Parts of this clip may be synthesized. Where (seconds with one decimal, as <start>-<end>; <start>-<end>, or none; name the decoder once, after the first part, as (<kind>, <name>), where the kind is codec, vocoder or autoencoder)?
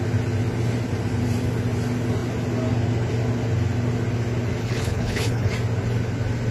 4.6-5.5 (codec, HILCodec)